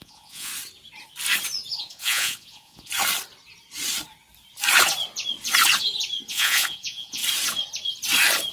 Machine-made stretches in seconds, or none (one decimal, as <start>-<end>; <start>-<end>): 0.0-0.5; 1.8-2.9; 6.3-7.2